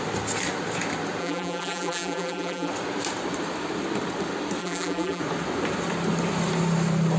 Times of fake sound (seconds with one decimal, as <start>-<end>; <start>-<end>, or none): 1.2-2.7; 4.6-5.2